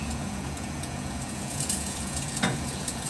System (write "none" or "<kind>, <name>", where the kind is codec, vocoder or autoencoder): vocoder, Vocos